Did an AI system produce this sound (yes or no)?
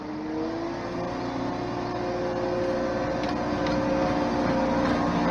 no